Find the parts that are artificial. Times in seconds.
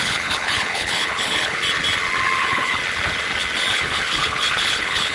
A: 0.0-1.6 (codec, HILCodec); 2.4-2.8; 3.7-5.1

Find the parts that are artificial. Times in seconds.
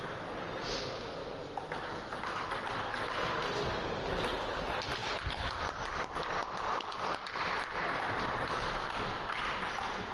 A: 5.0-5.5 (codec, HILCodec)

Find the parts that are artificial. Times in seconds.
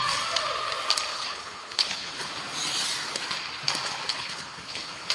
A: 1.1-2.3 (codec, HILCodec); 4.1-5.1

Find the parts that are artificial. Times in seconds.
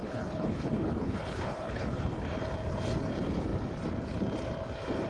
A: 0.0-2.4 (codec, HILCodec)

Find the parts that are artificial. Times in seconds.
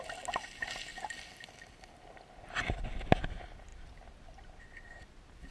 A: none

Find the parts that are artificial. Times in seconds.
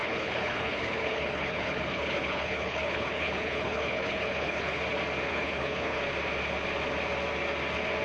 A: 0.0-4.8 (codec, HILCodec); 5.3-6.0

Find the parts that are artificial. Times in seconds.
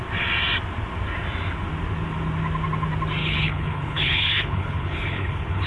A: 3.2-5.7 (codec, HILCodec)